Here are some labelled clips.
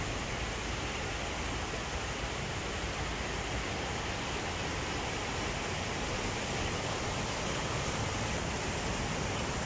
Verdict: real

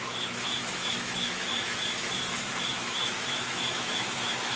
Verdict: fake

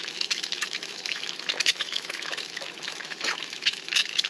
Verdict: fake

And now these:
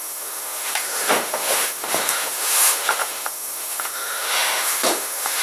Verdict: fake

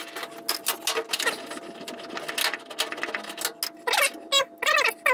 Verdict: real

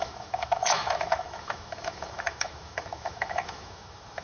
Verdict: fake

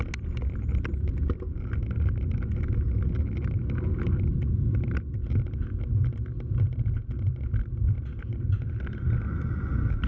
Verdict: real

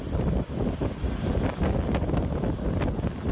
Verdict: real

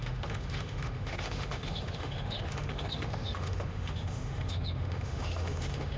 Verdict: fake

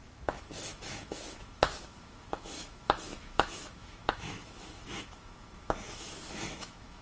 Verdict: fake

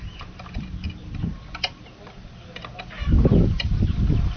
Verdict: real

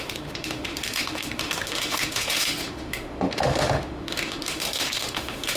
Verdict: fake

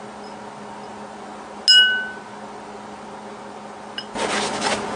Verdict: real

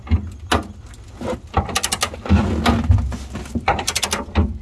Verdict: real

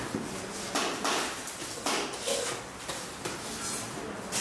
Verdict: real